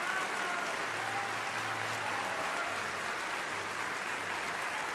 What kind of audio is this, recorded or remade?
recorded